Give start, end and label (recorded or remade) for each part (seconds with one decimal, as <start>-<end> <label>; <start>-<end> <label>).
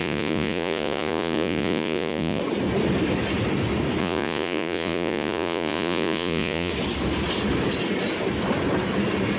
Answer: 0.0-2.4 remade; 2.4-4.0 recorded; 4.0-6.7 remade; 6.7-9.4 recorded